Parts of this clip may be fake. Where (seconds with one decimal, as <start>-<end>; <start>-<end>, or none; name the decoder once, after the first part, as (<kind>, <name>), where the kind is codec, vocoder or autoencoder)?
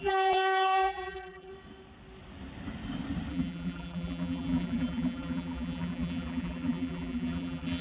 0.0-1.5 (vocoder, BigVGAN v2); 3.3-7.8